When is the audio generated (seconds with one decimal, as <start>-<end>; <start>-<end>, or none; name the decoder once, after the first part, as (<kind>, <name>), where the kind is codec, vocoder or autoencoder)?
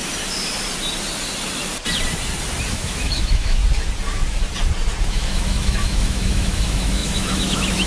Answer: 2.7-3.6 (autoencoder, DAC-VAE); 5.0-7.9